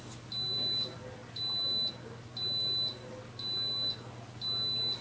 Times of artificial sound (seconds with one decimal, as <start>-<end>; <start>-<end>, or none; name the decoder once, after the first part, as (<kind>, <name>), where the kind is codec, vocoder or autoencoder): none